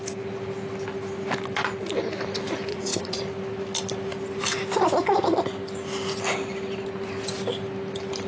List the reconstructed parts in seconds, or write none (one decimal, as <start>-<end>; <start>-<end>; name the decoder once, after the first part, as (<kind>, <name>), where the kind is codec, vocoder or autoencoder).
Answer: 2.7-3.2 (vocoder, Vocos)